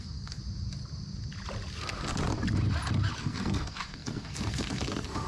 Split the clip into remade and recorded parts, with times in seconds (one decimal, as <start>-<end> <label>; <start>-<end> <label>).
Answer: 0.0-0.4 remade; 0.4-3.2 recorded; 3.2-5.3 remade